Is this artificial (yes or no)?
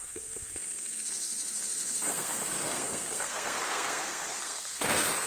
yes